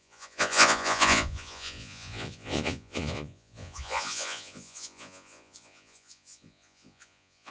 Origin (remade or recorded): remade